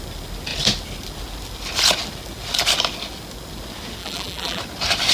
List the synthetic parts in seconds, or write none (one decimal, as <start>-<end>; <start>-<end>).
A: 4.0-4.6